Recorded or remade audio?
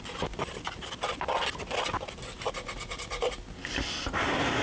recorded